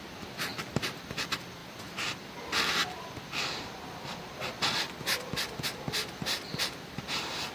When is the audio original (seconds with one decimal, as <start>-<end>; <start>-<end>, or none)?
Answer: 0.0-2.8; 3.8-7.5